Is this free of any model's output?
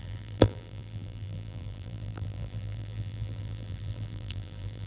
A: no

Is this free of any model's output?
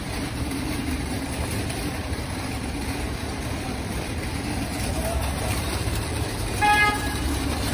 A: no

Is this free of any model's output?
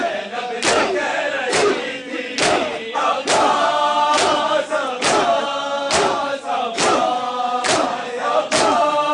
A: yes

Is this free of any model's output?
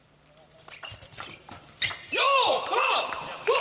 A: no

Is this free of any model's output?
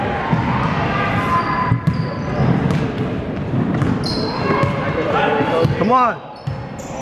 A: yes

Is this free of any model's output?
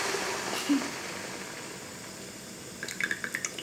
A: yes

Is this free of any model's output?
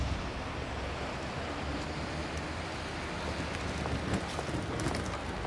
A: yes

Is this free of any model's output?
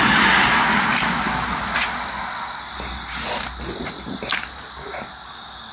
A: yes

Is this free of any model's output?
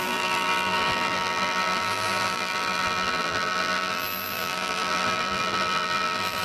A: no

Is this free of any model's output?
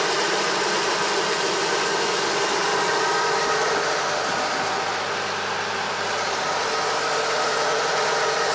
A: no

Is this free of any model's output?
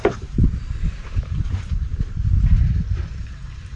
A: no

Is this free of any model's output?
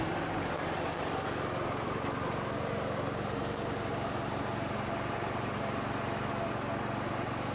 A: yes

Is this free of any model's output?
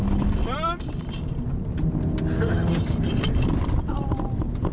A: yes